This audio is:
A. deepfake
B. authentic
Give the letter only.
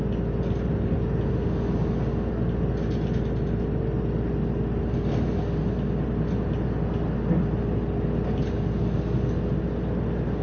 B